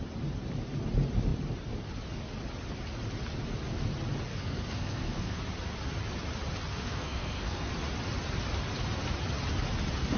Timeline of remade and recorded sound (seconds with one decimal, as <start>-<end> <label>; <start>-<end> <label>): 0.0-4.3 recorded; 4.3-5.4 remade; 5.4-6.7 recorded; 6.7-7.7 remade; 7.7-10.2 recorded